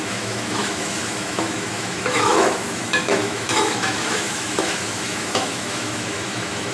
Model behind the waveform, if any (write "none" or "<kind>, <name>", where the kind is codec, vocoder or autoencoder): autoencoder, DAC-VAE